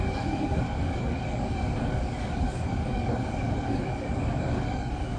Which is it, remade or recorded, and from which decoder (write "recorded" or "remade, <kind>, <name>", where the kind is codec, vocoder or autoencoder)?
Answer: remade, codec, DAC